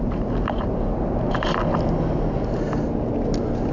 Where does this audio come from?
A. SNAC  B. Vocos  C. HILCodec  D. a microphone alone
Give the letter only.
D